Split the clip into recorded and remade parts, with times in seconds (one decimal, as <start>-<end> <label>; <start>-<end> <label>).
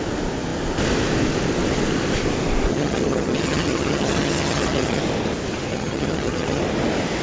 0.0-2.7 recorded; 2.7-5.0 remade; 5.0-5.7 recorded; 5.7-6.6 remade; 6.6-7.2 recorded